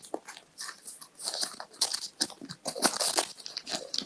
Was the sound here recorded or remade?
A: recorded